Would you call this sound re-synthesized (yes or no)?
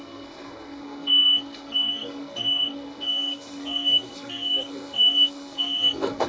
yes